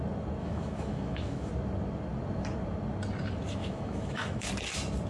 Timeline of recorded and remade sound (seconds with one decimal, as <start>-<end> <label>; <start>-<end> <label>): 0.0-0.4 recorded; 0.4-1.5 remade; 1.5-3.6 recorded; 3.6-4.5 remade; 4.5-5.1 recorded